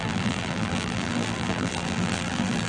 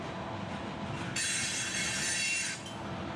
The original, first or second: second